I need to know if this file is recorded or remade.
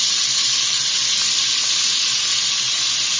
recorded